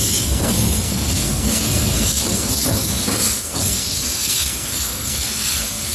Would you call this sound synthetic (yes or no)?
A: yes